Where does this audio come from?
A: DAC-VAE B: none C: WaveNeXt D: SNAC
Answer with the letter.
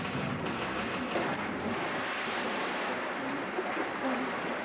B